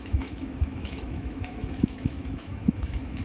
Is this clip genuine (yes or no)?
no